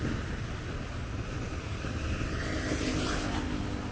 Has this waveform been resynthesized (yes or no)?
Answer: no